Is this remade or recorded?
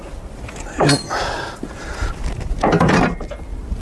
recorded